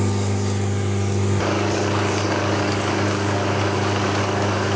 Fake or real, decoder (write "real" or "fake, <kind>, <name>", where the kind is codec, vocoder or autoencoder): fake, codec, DAC